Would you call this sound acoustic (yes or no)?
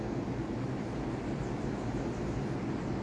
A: yes